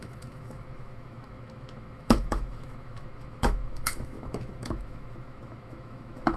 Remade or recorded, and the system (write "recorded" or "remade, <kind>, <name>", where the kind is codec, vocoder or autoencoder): remade, autoencoder, DAC-VAE